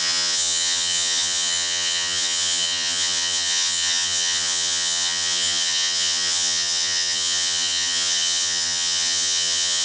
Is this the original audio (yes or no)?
no